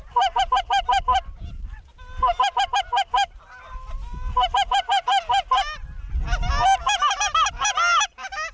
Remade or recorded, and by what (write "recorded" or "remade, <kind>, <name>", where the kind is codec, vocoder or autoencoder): recorded